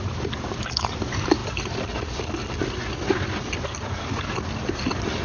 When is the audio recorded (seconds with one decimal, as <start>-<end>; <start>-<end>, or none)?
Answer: 0.0-5.2